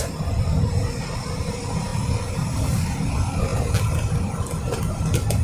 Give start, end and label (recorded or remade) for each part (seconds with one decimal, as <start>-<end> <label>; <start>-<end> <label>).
0.0-5.4 recorded

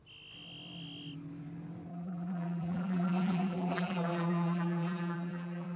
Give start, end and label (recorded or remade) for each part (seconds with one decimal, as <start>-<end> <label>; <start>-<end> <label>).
0.0-1.9 recorded; 1.9-5.8 remade

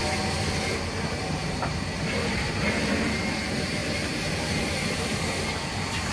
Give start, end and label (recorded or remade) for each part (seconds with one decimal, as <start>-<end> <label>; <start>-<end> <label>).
0.0-0.6 recorded; 0.6-6.1 remade

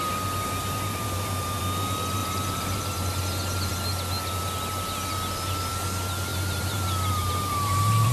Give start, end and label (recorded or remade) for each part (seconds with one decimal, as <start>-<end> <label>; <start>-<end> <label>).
0.0-0.6 recorded; 0.6-1.6 remade; 1.6-2.2 recorded; 2.2-3.2 remade; 3.2-6.3 recorded; 6.3-8.1 remade